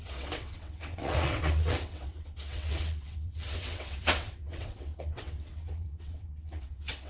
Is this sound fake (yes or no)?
yes